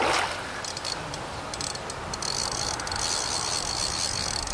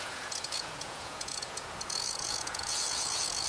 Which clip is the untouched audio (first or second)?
first